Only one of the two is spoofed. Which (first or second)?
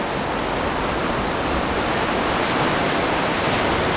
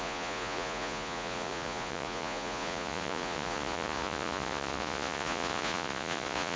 second